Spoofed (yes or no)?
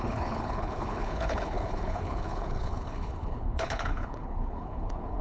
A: yes